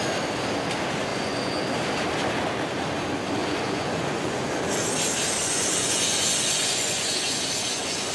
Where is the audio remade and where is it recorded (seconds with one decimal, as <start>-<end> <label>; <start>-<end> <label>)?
0.0-1.1 recorded; 1.1-1.6 remade; 1.6-3.4 recorded; 3.4-4.5 remade; 4.5-5.4 recorded; 5.4-8.1 remade